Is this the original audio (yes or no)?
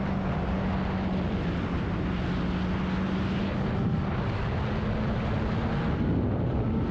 yes